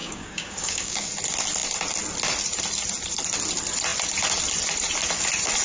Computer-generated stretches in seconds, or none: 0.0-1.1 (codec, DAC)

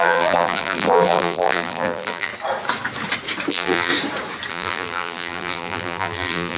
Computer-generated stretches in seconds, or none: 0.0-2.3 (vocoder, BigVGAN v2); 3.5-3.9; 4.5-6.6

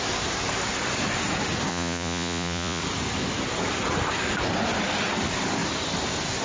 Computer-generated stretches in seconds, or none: 1.7-2.8 (vocoder, Vocos)